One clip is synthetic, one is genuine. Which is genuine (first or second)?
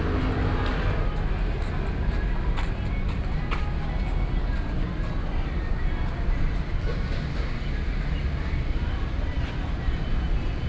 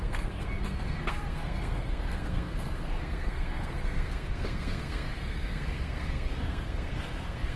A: first